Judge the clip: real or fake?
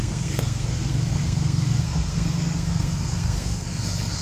fake